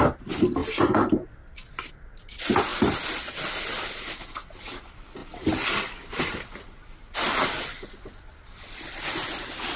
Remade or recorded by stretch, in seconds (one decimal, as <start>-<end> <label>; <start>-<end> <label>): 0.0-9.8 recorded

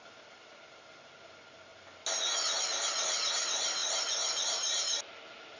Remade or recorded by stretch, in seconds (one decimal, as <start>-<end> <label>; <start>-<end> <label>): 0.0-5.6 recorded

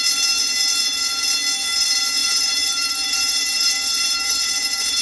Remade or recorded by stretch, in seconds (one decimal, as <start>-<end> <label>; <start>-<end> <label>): 0.0-2.2 recorded; 2.2-5.0 remade

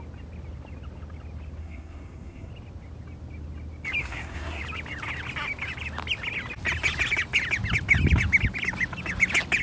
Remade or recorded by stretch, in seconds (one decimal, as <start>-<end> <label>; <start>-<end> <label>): 0.0-1.6 recorded; 1.6-2.5 remade; 2.5-4.0 recorded; 4.0-4.6 remade; 4.6-9.6 recorded